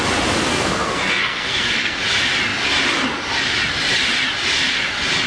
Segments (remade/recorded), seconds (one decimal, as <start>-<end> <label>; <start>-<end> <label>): 0.0-0.5 recorded; 0.5-2.0 remade; 2.0-5.3 recorded

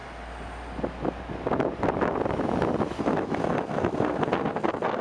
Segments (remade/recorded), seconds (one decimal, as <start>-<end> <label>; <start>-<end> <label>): 0.0-3.0 recorded; 3.0-5.0 remade

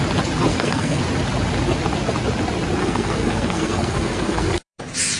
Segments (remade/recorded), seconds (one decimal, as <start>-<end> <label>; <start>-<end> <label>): 0.0-0.5 recorded; 0.5-1.0 remade; 1.0-2.8 recorded; 2.8-4.8 remade; 4.8-5.2 recorded

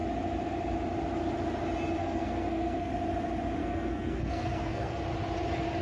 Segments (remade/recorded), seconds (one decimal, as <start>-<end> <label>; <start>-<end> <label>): 0.0-2.0 recorded; 2.0-2.9 remade; 2.9-3.6 recorded; 3.6-5.0 remade; 5.0-5.8 recorded

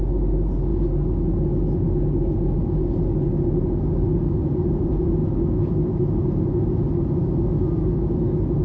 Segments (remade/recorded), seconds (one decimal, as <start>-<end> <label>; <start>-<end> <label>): 0.0-8.6 recorded

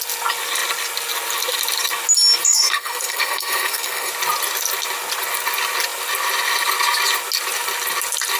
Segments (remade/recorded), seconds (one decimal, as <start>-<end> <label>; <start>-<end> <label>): 0.0-2.4 recorded; 2.4-4.1 remade; 4.1-8.4 recorded

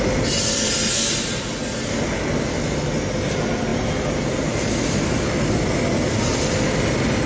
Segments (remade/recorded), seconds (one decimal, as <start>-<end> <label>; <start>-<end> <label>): 0.0-7.3 recorded

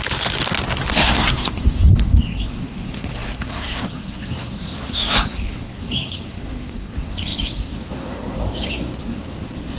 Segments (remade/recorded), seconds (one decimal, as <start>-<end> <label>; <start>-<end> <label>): 0.0-0.9 recorded; 0.9-9.8 remade